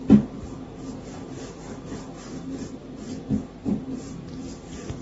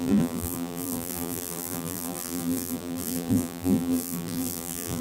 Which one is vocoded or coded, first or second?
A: second